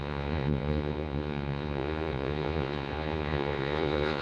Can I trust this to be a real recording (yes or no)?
no